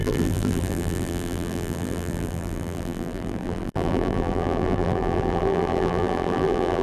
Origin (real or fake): fake